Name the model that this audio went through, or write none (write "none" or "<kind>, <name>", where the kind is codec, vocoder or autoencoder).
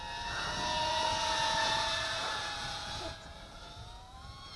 vocoder, Vocos